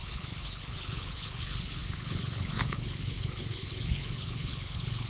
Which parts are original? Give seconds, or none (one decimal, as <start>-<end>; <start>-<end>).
none